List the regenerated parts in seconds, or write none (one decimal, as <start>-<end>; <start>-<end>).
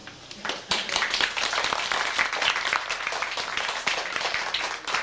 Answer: 0.0-3.0; 3.5-4.6